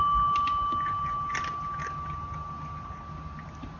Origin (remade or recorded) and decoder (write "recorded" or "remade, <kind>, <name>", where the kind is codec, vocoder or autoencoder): recorded